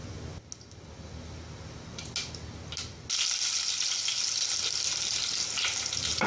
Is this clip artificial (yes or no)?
no